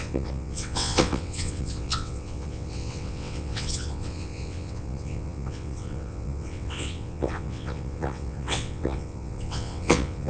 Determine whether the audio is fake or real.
fake